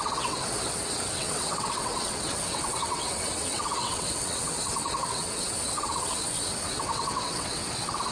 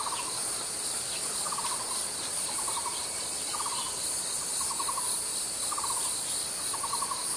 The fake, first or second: first